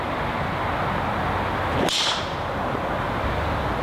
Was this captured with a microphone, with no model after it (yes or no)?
yes